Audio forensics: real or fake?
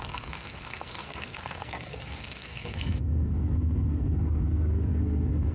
fake